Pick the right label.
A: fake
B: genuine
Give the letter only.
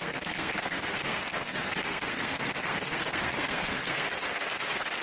A